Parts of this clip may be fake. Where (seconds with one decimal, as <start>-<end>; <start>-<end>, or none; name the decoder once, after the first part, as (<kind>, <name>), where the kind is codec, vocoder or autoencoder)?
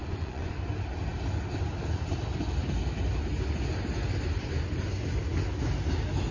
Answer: 0.0-0.5 (vocoder, Vocos)